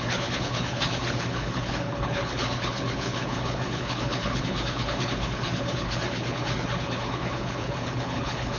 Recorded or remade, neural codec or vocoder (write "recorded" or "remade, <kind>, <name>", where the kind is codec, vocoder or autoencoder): remade, codec, HILCodec